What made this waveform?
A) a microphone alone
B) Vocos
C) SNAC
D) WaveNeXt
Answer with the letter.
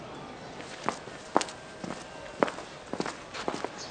A